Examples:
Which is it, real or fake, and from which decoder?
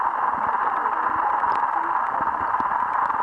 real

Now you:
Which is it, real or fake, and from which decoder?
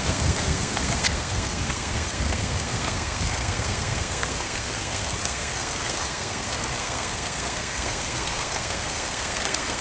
fake, codec, SNAC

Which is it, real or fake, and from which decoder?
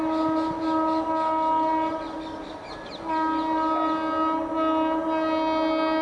real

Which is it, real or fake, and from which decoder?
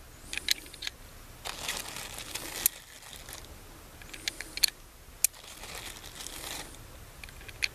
real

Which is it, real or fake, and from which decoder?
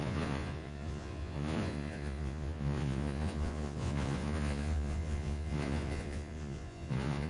fake, vocoder, Vocos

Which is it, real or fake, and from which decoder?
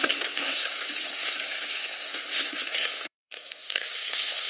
fake, codec, SNAC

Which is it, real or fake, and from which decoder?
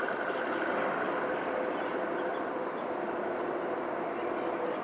real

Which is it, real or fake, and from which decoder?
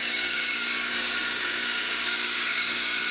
fake, codec, DAC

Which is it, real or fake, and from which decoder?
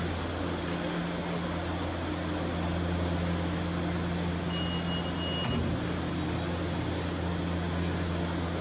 real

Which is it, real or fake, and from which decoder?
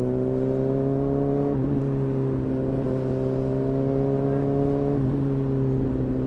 real